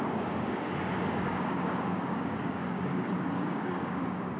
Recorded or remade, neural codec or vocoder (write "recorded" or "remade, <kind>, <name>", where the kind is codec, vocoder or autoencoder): remade, codec, DAC